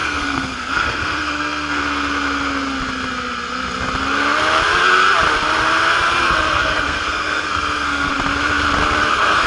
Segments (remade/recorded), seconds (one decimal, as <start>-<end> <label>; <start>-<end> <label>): 0.0-1.8 remade; 1.8-6.2 recorded; 6.2-8.1 remade; 8.1-9.1 recorded; 9.1-9.5 remade